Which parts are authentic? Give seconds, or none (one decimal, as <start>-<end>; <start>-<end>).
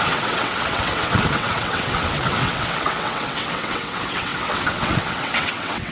none